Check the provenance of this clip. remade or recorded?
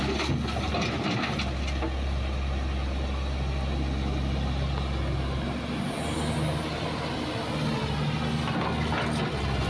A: recorded